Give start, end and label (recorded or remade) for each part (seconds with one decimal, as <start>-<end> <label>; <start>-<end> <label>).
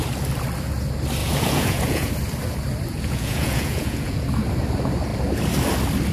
0.0-1.2 recorded; 1.2-2.1 remade; 2.1-2.9 recorded; 2.9-4.2 remade; 4.2-6.1 recorded